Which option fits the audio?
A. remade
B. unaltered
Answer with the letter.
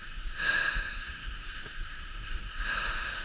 A